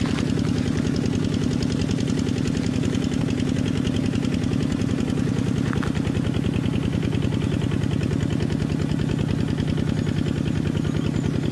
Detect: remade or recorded recorded